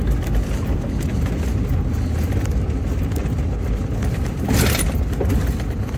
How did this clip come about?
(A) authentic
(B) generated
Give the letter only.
A